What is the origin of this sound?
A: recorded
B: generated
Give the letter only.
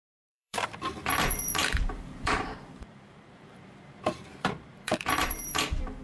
B